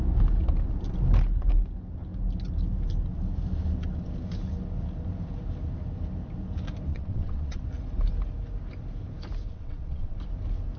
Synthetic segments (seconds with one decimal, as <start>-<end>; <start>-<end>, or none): 6.9-7.6; 9.4-10.2